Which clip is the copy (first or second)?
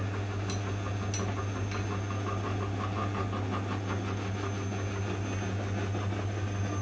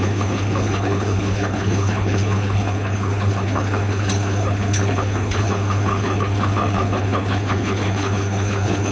second